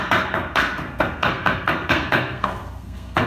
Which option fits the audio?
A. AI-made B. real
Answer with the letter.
A